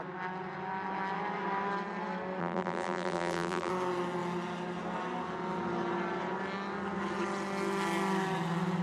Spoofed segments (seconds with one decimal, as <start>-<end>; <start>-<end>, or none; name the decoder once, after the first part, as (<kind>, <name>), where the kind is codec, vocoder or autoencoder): 2.4-3.7 (vocoder, BigVGAN v2)